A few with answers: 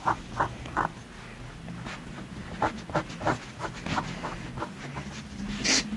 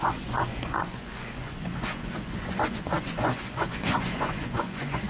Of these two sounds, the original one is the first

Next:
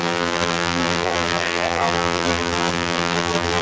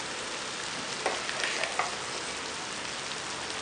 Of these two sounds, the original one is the second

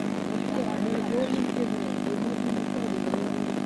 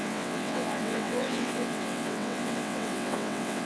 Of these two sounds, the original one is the first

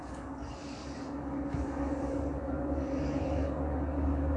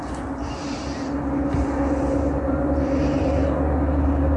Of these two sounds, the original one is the second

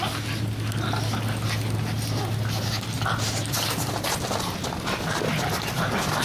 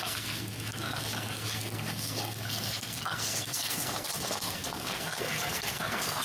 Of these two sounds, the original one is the first